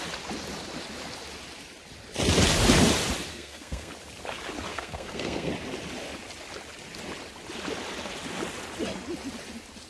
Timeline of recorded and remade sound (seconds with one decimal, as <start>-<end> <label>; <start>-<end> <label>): 0.0-3.3 recorded; 3.3-3.9 remade; 3.9-4.7 recorded; 4.7-5.5 remade; 5.5-9.9 recorded